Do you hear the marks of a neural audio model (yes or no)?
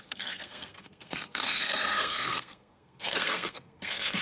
yes